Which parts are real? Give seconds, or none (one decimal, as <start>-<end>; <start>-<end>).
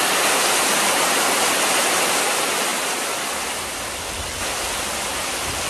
0.0-5.7